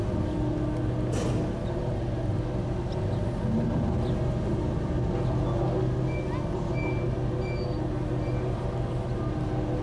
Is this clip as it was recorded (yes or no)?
yes